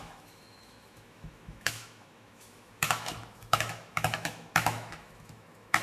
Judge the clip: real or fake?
fake